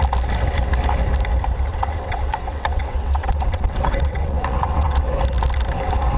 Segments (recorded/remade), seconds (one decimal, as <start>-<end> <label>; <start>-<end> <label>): 0.0-1.7 recorded; 1.7-5.0 remade; 5.0-6.2 recorded